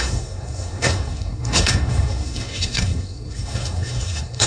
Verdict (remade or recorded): remade